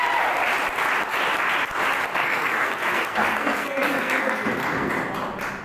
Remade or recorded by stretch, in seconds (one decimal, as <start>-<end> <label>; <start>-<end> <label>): 0.0-2.2 recorded; 2.2-4.9 remade; 4.9-5.6 recorded